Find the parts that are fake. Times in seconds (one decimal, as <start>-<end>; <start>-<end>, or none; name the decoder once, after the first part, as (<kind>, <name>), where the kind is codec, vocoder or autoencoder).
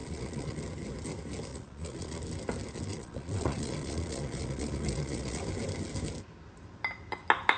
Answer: 0.0-0.6 (vocoder, Vocos); 1.5-2.2; 2.9-5.4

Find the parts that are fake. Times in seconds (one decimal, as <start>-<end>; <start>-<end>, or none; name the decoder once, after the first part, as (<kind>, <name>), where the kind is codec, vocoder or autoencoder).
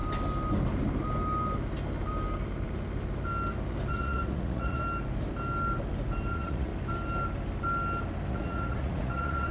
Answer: 3.9-4.8 (vocoder, Vocos); 6.3-6.7; 8.3-9.5